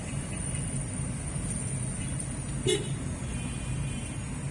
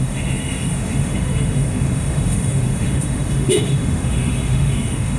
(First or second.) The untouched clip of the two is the first